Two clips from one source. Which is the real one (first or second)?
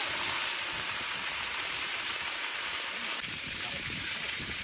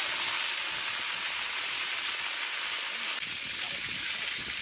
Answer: second